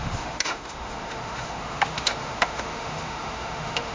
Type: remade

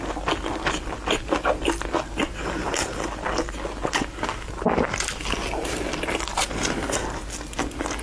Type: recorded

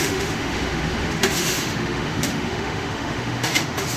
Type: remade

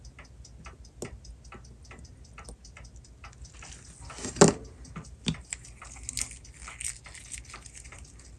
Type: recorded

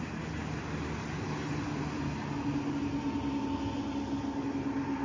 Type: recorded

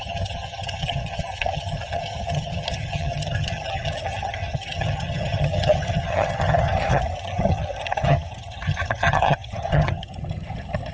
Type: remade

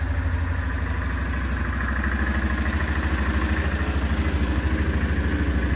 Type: recorded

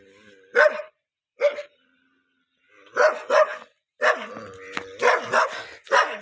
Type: recorded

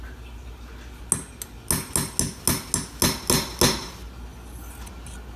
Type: recorded